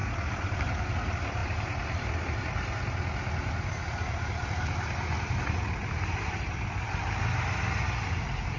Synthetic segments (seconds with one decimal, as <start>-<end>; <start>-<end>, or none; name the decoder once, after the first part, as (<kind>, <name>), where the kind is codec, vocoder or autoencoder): none